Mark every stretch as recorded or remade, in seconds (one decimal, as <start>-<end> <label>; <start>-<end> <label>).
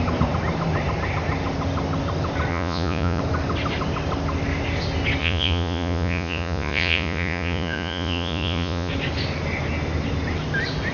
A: 0.0-2.5 recorded; 2.5-3.2 remade; 3.2-5.2 recorded; 5.2-8.9 remade; 8.9-10.9 recorded